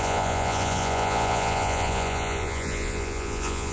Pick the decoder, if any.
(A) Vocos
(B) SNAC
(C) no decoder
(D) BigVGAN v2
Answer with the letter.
A